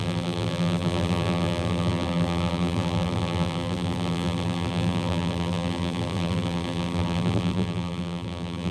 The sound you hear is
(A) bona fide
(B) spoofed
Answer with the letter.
B